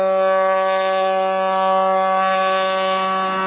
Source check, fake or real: real